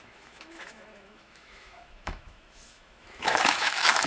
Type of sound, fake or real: fake